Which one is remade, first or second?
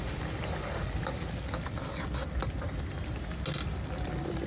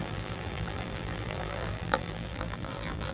second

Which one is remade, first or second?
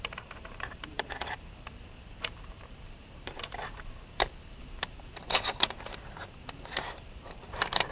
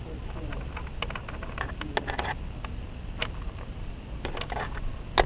first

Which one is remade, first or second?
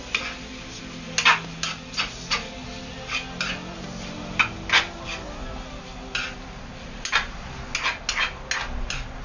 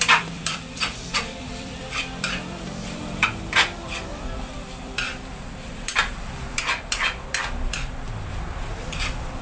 second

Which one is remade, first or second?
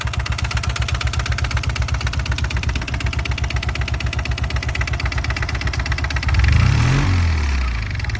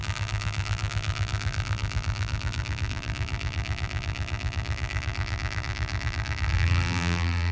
second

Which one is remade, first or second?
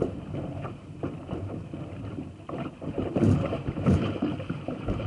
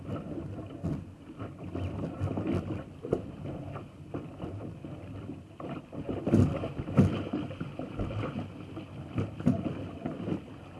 first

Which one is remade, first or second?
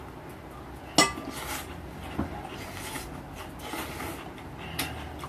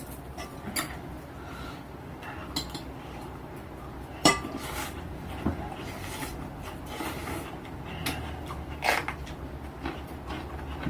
second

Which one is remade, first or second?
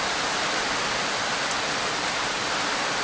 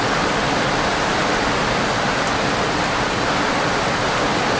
first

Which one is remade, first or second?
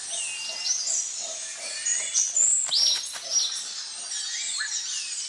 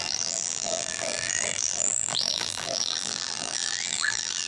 second